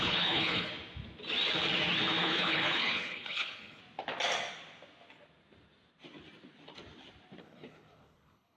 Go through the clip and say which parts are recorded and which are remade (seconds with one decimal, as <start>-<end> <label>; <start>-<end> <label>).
0.0-0.7 remade; 0.7-2.2 recorded; 2.2-3.8 remade; 3.8-7.4 recorded; 7.4-8.6 remade

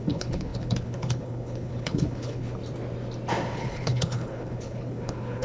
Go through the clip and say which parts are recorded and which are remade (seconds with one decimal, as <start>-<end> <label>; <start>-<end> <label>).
0.0-2.6 remade; 2.6-3.6 recorded; 3.6-5.4 remade

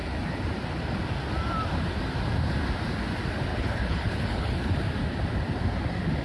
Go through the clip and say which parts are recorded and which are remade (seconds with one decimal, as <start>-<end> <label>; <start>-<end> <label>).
0.0-3.5 recorded; 3.5-4.7 remade; 4.7-6.2 recorded

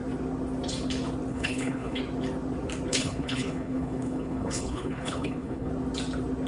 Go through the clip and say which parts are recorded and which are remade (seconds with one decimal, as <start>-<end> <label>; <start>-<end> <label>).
0.0-1.3 recorded; 1.3-2.0 remade; 2.0-2.9 recorded; 2.9-5.7 remade; 5.7-6.5 recorded

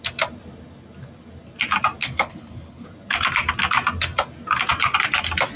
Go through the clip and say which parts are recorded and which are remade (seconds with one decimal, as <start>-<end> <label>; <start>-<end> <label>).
0.0-2.0 recorded; 2.0-2.9 remade; 2.9-5.6 recorded

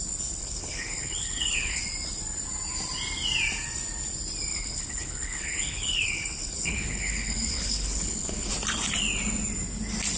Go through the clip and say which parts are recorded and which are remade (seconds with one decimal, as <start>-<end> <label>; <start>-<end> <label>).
0.0-0.4 recorded; 0.4-1.8 remade; 1.8-4.5 recorded; 4.5-8.5 remade; 8.5-10.2 recorded

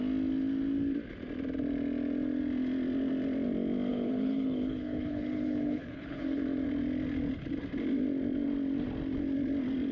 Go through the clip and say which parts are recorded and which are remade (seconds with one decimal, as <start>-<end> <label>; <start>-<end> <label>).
0.0-3.9 recorded; 3.9-6.4 remade; 6.4-9.9 recorded

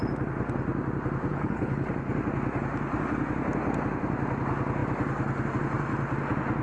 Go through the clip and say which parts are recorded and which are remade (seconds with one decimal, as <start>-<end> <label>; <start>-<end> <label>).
0.0-1.3 recorded; 1.3-1.9 remade; 1.9-6.6 recorded